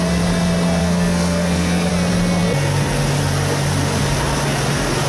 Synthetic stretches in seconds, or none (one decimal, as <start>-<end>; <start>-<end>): 0.8-1.9